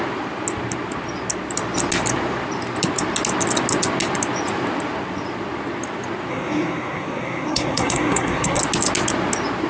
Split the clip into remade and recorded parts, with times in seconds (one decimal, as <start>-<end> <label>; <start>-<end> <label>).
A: 0.0-6.3 recorded; 6.3-8.6 remade; 8.6-9.7 recorded